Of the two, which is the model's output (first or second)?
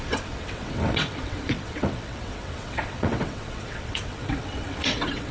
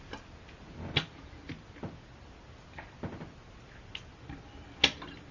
first